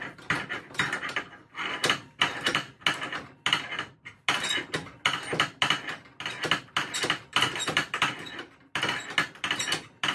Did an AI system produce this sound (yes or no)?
no